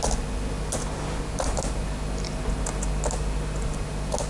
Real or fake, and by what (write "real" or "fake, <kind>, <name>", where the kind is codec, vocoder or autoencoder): real